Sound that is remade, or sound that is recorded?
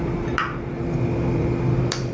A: remade